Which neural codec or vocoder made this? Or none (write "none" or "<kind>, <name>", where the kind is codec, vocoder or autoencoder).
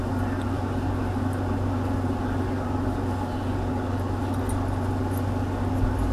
none